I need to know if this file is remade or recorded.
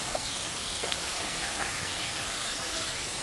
remade